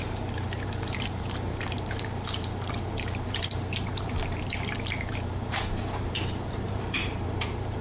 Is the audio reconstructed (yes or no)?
yes